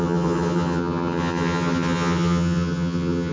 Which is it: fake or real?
fake